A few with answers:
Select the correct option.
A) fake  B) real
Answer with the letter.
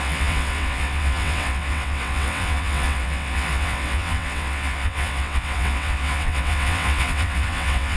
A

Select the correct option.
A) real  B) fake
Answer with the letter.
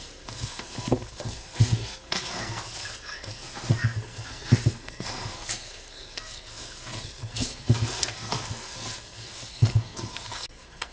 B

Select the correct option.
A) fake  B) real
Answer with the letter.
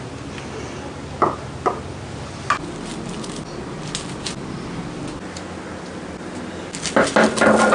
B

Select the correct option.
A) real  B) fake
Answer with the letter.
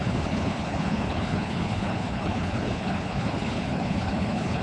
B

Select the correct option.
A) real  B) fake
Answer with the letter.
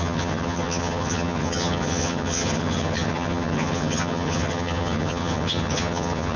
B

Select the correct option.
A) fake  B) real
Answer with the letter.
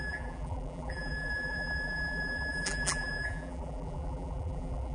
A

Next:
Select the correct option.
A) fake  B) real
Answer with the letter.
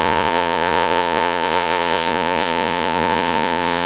A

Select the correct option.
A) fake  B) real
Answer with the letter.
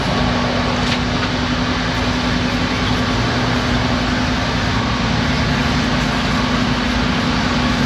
B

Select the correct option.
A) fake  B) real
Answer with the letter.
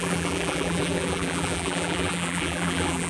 A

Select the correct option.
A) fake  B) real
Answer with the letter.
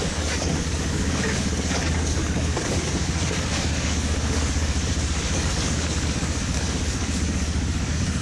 A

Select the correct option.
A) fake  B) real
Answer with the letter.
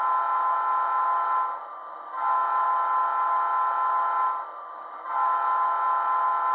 B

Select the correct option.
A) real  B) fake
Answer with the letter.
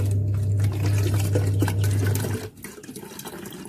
A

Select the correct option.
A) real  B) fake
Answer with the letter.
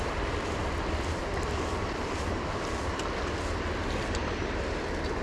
A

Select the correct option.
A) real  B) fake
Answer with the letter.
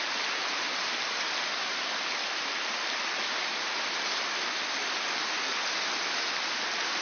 A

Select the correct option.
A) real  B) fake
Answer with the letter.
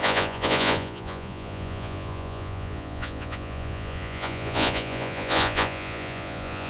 B